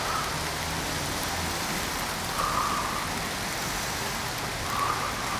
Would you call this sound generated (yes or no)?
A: no